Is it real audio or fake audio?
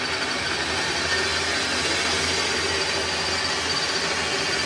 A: real